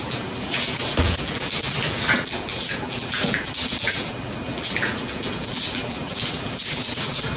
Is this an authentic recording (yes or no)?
no